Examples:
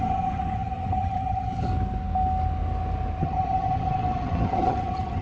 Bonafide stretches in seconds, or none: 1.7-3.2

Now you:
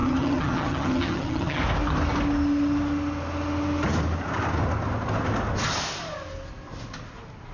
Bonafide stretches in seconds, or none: 1.6-7.5

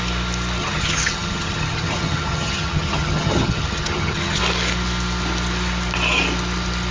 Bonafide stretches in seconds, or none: 0.0-0.6; 4.4-6.9

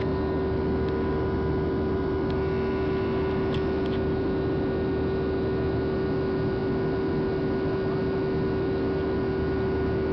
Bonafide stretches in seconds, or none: 0.0-10.1

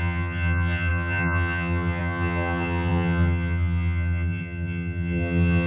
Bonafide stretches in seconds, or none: none

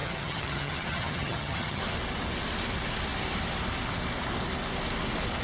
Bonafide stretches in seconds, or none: 1.8-5.4

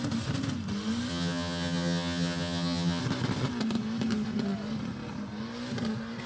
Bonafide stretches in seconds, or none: 0.0-1.1; 3.0-6.3

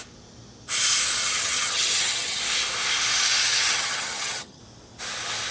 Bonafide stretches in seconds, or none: 0.0-1.2; 2.4-3.4; 4.6-5.5